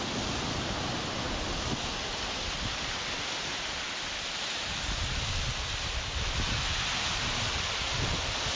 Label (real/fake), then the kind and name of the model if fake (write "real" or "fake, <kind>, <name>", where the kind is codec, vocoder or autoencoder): real